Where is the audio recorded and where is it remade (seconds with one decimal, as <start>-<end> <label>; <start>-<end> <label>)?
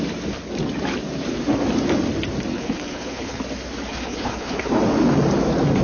0.0-2.5 recorded; 2.5-3.4 remade; 3.4-3.9 recorded; 3.9-4.7 remade; 4.7-5.8 recorded